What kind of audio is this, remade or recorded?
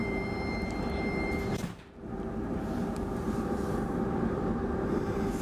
remade